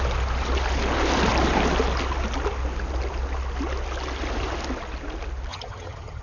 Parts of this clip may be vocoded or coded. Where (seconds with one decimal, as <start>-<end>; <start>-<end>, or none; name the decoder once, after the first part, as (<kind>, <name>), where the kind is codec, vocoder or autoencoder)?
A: 5.5-6.2 (vocoder, HiFi-GAN)